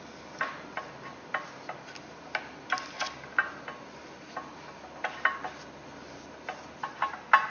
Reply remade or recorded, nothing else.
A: recorded